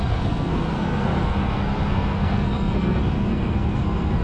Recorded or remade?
remade